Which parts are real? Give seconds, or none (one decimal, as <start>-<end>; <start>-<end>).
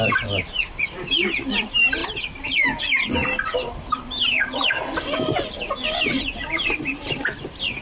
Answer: 2.0-2.8